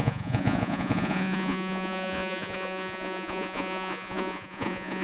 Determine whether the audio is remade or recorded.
remade